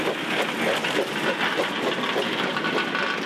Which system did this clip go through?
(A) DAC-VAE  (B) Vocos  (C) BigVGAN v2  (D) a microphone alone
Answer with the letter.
D